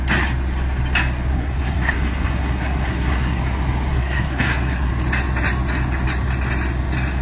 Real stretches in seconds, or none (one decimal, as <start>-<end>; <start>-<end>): 0.0-1.3; 3.4-3.9; 4.9-7.2